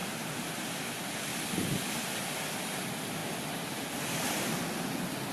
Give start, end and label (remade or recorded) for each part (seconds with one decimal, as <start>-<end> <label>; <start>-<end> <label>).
0.0-0.8 remade; 0.8-1.3 recorded; 1.3-2.2 remade; 2.2-3.2 recorded; 3.2-3.9 remade; 3.9-5.3 recorded